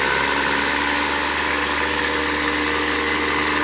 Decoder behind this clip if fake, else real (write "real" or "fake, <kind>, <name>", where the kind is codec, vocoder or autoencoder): real